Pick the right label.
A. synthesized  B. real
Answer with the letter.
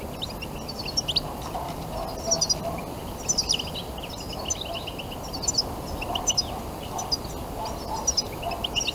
B